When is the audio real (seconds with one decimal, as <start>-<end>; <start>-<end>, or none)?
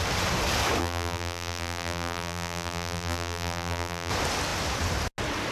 0.0-0.8; 4.1-5.5